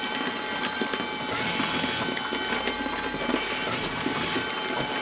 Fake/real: real